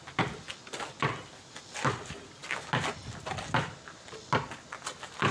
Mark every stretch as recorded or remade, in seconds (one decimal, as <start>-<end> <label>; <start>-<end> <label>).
0.0-5.3 recorded